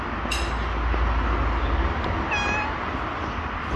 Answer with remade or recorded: recorded